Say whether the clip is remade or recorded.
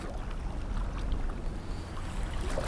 recorded